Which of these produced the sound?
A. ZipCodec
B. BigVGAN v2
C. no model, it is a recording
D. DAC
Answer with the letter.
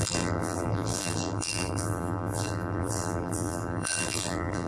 B